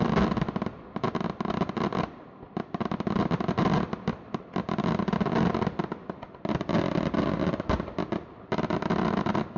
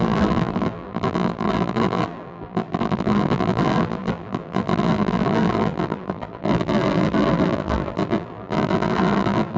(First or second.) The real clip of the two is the first